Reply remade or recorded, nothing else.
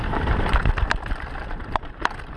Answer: remade